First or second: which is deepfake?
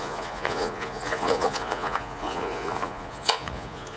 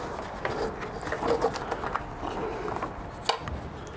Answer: first